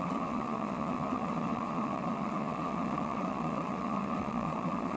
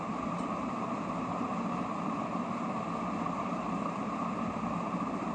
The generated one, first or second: first